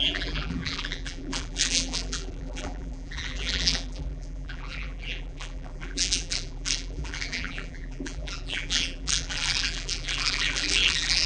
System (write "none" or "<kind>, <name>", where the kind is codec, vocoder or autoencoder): vocoder, BigVGAN v2